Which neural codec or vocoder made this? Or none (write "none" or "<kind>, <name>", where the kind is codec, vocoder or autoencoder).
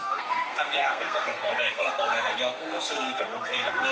codec, SNAC